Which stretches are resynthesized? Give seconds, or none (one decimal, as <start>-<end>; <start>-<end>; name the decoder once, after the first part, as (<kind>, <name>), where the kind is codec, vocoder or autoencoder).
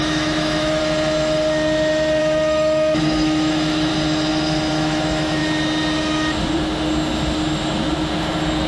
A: 0.0-0.8 (autoencoder, DAC-VAE); 2.2-3.9; 4.7-5.4